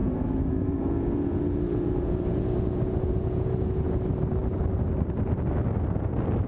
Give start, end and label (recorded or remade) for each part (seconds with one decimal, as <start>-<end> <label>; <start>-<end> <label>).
0.0-3.9 remade; 3.9-6.5 recorded

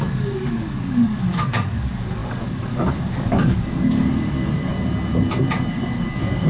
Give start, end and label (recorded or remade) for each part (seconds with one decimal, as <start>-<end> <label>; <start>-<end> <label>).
0.0-4.7 remade; 4.7-5.7 recorded; 5.7-6.5 remade

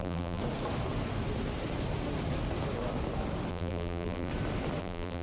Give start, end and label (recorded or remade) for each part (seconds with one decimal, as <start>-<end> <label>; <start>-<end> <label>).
0.0-0.4 remade; 0.4-3.5 recorded; 3.5-4.3 remade; 4.3-4.8 recorded; 4.8-5.2 remade

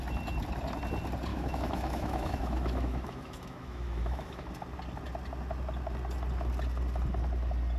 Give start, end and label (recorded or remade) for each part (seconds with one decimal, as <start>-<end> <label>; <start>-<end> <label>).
0.0-1.3 recorded; 1.3-4.5 remade; 4.5-7.8 recorded